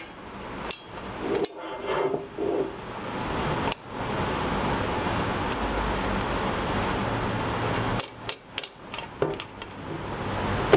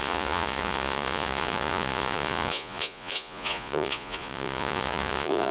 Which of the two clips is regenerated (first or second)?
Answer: second